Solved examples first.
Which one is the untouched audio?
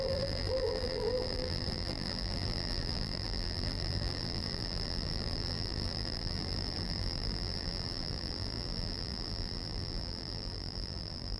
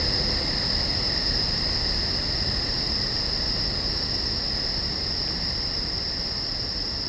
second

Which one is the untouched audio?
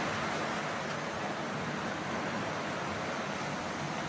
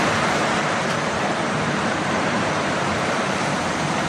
first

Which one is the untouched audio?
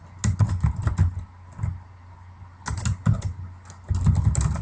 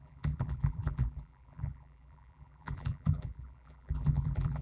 first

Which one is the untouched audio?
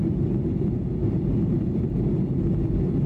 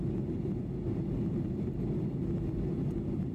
second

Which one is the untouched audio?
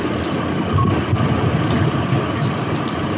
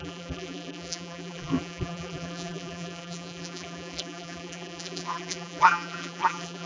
first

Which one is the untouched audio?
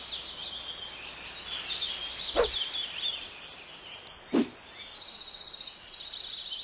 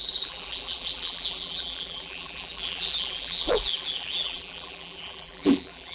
first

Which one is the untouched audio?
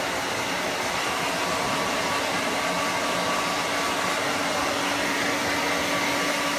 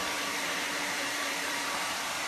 first